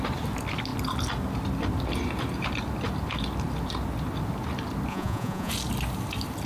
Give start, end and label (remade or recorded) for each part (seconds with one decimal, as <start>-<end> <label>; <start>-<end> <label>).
0.0-4.9 recorded; 4.9-5.5 remade; 5.5-6.5 recorded